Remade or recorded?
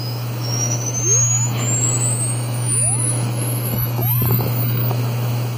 remade